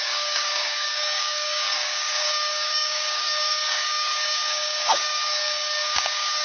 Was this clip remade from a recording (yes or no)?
yes